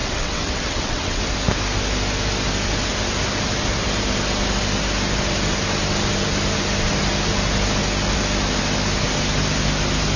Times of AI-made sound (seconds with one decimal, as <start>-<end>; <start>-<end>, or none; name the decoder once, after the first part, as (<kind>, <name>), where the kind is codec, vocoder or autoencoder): 0.0-1.2 (vocoder, WaveNeXt)